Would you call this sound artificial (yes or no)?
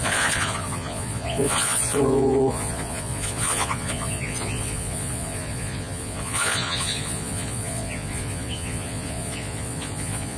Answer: yes